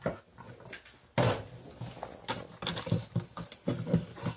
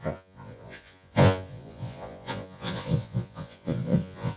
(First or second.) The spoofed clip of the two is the second